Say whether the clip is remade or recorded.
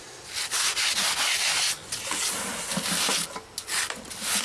recorded